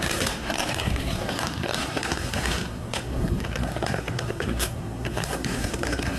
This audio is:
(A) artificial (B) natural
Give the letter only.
A